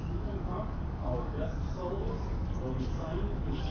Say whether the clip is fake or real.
fake